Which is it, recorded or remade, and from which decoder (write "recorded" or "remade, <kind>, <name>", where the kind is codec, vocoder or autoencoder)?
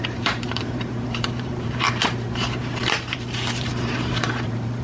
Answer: remade, vocoder, BigVGAN v2